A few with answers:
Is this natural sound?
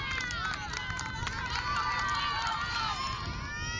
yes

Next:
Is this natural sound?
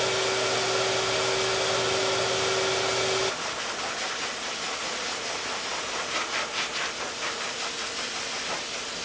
yes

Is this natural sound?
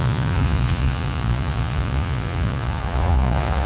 no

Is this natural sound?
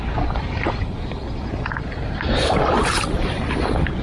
no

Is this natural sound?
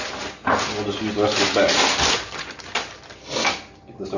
yes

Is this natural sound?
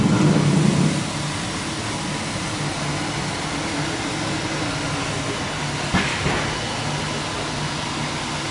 yes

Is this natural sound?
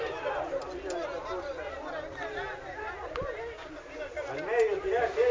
yes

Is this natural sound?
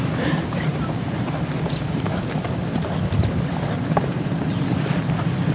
yes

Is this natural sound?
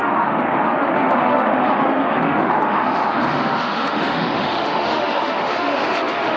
no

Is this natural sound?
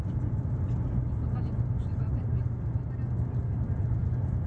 yes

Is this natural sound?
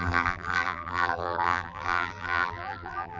no